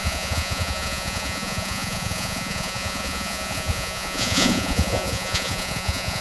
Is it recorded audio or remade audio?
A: remade